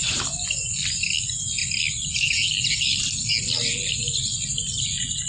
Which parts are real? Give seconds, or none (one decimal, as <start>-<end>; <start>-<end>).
0.0-5.3